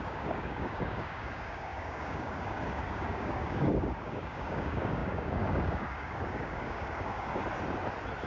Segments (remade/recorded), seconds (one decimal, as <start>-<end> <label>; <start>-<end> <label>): 0.0-7.4 remade; 7.4-8.3 recorded